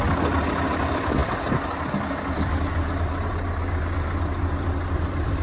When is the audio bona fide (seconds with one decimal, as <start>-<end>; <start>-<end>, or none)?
0.0-5.4